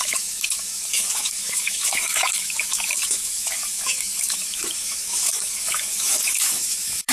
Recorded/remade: remade